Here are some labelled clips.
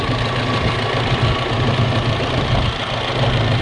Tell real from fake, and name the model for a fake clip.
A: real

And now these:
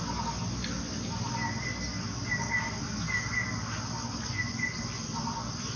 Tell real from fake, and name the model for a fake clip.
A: real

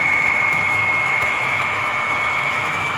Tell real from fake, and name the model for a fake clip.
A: fake, autoencoder, DAC-VAE